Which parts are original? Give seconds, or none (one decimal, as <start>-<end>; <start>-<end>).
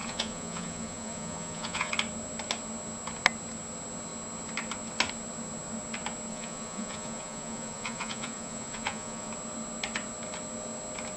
1.9-6.3; 9.3-11.2